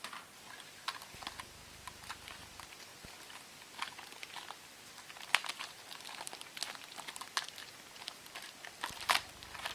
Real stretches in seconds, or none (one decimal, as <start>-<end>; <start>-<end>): 0.0-2.9; 8.1-9.7